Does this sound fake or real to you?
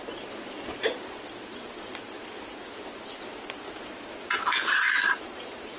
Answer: fake